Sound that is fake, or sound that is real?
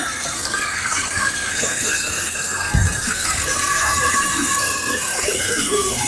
fake